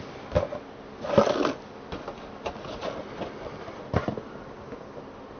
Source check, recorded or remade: recorded